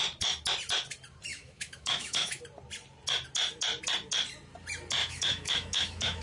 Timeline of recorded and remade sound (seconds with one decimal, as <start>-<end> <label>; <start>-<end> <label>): 0.0-1.3 recorded; 1.3-2.4 remade; 2.4-5.0 recorded; 5.0-6.2 remade